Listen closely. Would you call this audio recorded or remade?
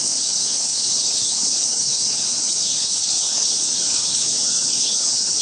remade